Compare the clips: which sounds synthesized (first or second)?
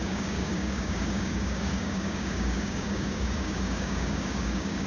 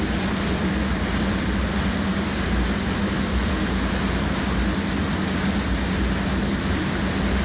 first